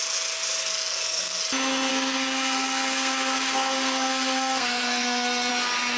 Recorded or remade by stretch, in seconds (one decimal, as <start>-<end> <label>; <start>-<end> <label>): 0.0-0.9 recorded; 0.9-1.4 remade; 1.4-1.9 recorded; 1.9-5.5 remade; 5.5-6.0 recorded